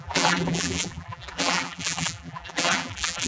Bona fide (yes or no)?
no